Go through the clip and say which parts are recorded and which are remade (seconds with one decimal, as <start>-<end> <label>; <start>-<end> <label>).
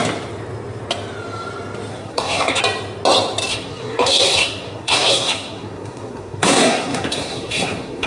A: 0.0-1.9 recorded; 1.9-2.6 remade; 2.6-3.5 recorded; 3.5-8.1 remade